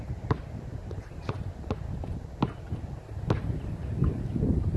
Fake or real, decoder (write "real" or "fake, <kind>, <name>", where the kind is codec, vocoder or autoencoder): real